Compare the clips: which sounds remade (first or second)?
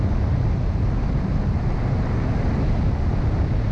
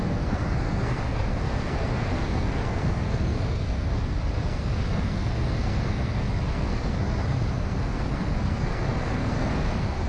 second